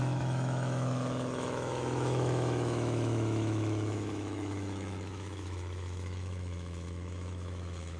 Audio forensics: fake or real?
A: fake